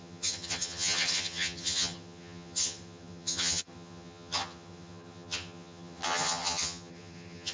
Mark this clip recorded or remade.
remade